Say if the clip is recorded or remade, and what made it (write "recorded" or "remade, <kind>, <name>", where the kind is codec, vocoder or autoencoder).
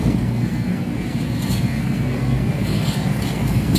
remade, codec, SNAC